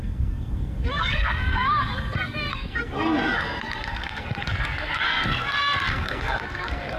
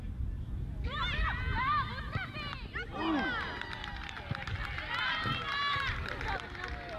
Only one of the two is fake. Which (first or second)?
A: first